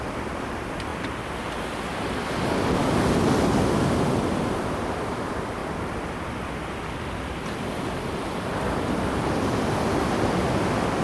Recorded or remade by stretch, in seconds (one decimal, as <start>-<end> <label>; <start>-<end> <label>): 0.0-0.9 remade; 0.9-4.8 recorded; 4.8-11.0 remade